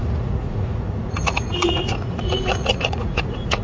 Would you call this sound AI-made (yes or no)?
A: yes